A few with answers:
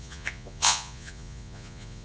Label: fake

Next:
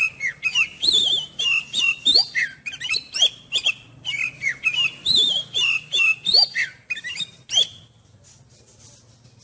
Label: fake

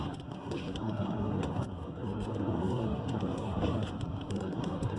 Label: fake